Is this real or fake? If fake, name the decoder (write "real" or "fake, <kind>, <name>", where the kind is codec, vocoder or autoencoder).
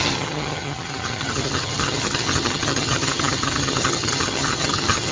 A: fake, vocoder, HiFi-GAN